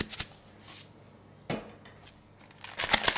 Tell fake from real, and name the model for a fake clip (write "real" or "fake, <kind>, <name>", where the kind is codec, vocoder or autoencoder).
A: real